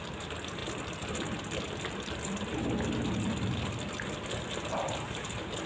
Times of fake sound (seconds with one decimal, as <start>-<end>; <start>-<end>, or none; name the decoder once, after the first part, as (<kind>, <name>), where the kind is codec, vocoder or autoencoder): none